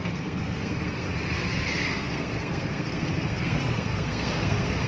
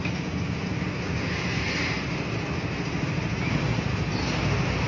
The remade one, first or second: first